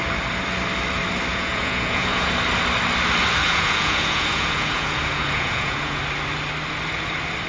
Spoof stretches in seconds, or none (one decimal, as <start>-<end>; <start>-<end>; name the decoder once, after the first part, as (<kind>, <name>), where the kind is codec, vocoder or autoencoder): 1.3-2.3 (vocoder, Vocos); 3.4-6.0